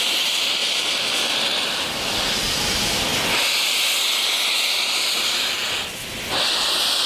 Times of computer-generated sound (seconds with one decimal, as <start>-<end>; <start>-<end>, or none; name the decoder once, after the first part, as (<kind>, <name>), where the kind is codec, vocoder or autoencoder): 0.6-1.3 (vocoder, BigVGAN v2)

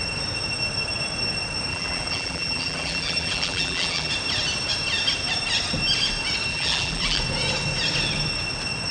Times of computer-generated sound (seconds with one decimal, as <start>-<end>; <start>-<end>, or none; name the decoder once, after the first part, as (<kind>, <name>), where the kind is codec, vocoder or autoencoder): 1.7-4.1 (vocoder, BigVGAN v2); 6.5-7.2

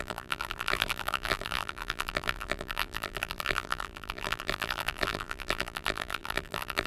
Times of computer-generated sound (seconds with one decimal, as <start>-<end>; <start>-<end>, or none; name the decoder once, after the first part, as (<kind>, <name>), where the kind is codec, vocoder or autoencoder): 0.0-6.9 (vocoder, BigVGAN v2)